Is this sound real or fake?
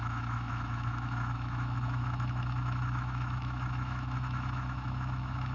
fake